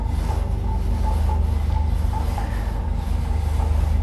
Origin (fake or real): real